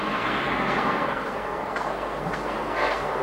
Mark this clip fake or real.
fake